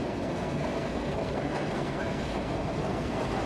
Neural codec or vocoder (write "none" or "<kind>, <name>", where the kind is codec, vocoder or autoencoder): codec, SNAC